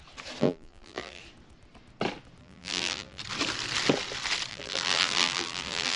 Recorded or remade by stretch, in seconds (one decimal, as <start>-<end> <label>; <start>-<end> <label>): 0.0-0.4 recorded; 0.4-1.2 remade; 1.2-2.4 recorded; 2.4-3.2 remade; 3.2-4.5 recorded; 4.5-6.0 remade